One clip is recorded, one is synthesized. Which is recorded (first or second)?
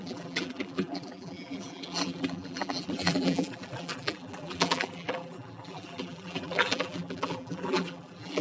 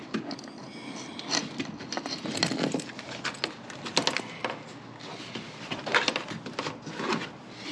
second